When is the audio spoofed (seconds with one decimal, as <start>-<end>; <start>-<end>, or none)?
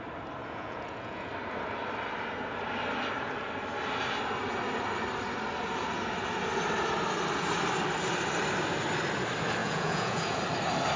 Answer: 0.4-1.3; 9.6-10.4